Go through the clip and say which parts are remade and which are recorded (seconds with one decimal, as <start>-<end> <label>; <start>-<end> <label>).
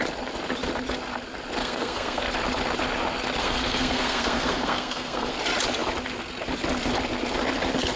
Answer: 0.0-1.6 recorded; 1.6-2.2 remade; 2.2-3.4 recorded; 3.4-5.3 remade; 5.3-8.0 recorded